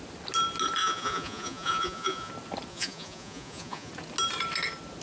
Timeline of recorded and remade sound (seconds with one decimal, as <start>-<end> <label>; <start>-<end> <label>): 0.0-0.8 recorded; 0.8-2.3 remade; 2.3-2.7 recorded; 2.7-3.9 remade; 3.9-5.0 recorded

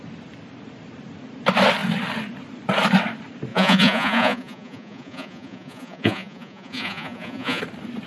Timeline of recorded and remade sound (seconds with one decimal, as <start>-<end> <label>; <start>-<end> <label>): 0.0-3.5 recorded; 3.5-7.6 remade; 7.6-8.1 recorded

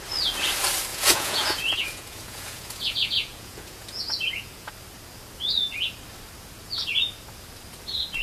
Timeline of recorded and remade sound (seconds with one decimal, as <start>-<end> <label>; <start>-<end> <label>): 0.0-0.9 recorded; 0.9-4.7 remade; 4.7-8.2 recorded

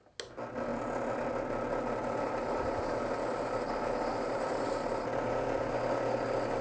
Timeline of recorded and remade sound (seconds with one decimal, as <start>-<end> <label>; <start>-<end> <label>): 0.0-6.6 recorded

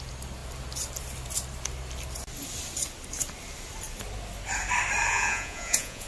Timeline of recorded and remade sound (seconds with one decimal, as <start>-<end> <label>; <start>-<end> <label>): 0.0-5.1 recorded; 5.1-6.1 remade

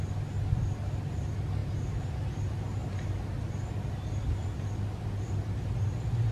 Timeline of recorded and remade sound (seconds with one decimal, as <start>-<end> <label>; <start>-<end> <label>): 0.0-6.3 recorded

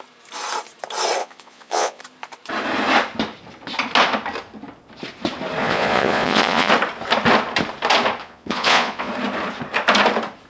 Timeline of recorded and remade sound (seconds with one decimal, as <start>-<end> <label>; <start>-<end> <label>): 0.0-1.2 recorded; 1.2-2.0 remade; 2.0-5.6 recorded; 5.6-6.7 remade; 6.7-8.2 recorded; 8.2-9.1 remade; 9.1-10.5 recorded